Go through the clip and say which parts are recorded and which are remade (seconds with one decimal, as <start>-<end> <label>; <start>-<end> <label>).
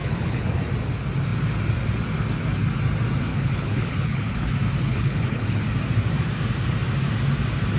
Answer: 0.0-0.6 remade; 0.6-3.3 recorded; 3.3-4.5 remade; 4.5-4.9 recorded; 4.9-5.6 remade; 5.6-7.8 recorded